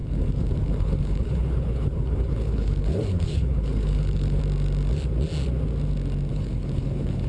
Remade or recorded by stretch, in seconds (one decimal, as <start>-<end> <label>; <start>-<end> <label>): 0.0-4.4 remade; 4.4-6.3 recorded; 6.3-7.3 remade